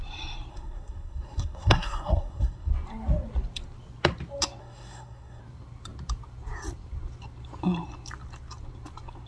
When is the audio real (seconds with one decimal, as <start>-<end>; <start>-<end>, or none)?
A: 0.0-0.5; 2.7-4.6; 5.4-9.3